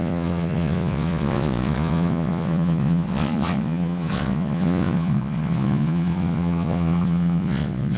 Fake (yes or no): yes